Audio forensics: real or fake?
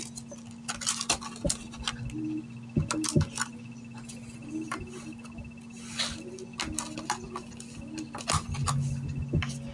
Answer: real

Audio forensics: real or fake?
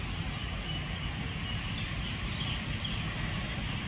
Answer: real